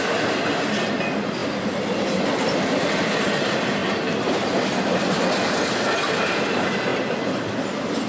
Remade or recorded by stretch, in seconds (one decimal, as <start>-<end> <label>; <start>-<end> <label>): 0.0-8.1 recorded